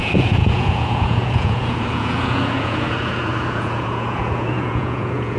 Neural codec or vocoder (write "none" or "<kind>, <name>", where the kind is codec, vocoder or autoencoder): vocoder, Vocos